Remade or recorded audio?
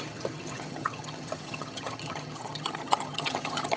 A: remade